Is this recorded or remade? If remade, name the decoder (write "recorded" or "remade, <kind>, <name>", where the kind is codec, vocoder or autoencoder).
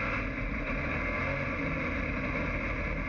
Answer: recorded